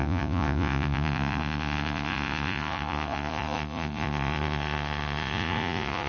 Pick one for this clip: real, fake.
fake